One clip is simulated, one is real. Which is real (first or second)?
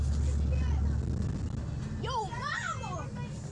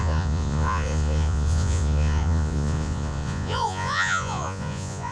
first